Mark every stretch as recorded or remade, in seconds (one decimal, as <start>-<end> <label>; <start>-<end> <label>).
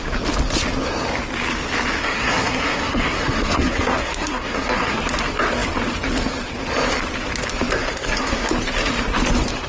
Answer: 0.0-2.0 recorded; 2.0-5.0 remade; 5.0-7.8 recorded; 7.8-8.5 remade; 8.5-9.7 recorded